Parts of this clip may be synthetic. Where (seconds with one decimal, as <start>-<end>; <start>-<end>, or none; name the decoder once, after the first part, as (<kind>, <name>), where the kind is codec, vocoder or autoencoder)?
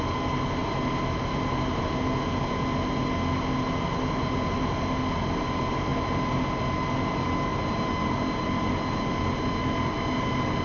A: none